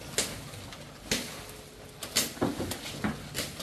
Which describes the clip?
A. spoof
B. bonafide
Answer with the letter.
B